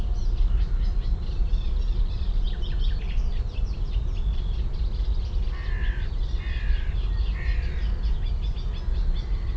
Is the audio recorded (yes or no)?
yes